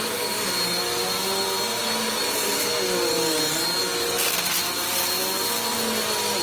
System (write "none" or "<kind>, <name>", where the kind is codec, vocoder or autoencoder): none